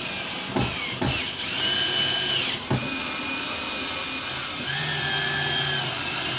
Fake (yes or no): no